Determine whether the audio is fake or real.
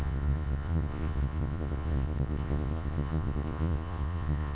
fake